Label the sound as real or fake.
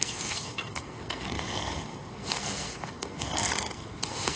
fake